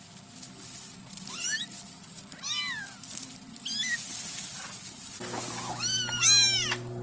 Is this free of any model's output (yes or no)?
yes